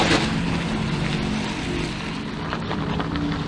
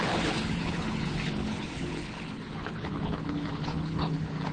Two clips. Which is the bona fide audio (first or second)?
first